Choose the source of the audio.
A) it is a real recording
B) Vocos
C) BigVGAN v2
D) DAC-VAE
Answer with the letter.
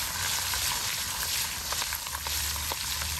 A